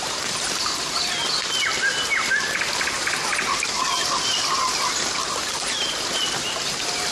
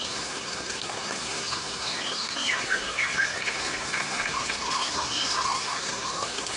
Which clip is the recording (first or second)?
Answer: first